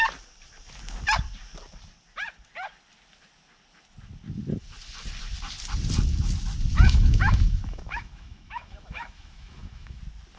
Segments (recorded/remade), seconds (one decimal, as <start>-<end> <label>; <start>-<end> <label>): 0.0-6.7 recorded; 6.7-10.0 remade; 10.0-10.4 recorded